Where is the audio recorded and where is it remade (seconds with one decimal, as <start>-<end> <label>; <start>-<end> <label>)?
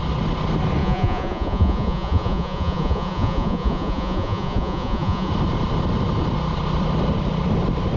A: 0.0-0.8 recorded; 0.8-5.3 remade; 5.3-8.0 recorded